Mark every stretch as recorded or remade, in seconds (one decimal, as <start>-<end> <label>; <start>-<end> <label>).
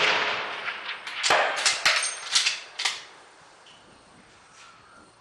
0.0-5.2 recorded